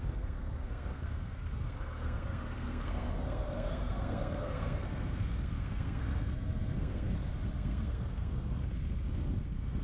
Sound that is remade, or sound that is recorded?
remade